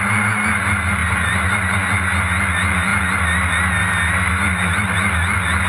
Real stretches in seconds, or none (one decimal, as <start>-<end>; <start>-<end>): 0.0-5.7